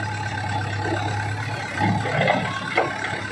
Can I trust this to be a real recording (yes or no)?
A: yes